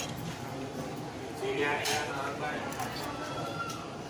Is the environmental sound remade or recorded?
recorded